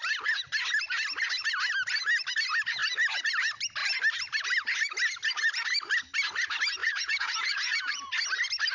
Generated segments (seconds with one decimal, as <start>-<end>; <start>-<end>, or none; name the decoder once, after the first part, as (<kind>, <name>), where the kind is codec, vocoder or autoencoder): 6.8-8.1 (vocoder, Vocos)